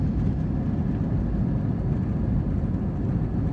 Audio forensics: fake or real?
real